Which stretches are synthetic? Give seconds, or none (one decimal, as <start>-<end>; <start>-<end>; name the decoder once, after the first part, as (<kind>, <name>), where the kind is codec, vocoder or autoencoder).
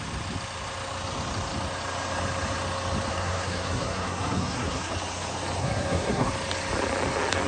3.1-4.9 (codec, SNAC); 5.6-6.3